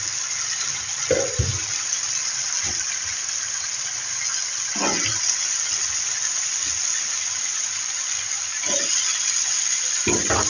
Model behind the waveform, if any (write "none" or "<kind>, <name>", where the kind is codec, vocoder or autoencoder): none